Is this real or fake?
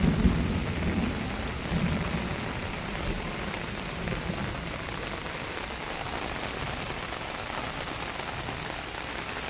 real